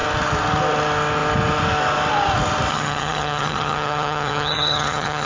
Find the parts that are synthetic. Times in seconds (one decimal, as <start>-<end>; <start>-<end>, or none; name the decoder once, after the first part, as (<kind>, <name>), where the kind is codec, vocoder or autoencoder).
2.7-5.3 (vocoder, HiFi-GAN)